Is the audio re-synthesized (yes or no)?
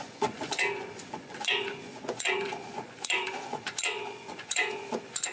yes